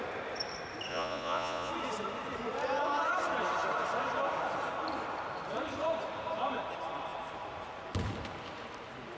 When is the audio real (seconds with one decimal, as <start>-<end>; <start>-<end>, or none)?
0.0-0.9; 1.7-9.2

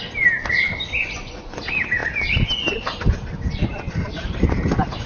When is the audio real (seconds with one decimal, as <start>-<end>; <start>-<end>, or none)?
0.0-1.0; 1.6-5.1

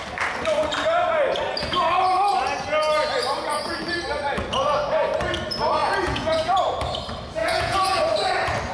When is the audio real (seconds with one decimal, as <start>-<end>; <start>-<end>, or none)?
0.0-5.8; 6.6-7.4; 8.0-8.7